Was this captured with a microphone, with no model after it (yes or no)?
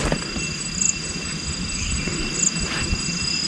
yes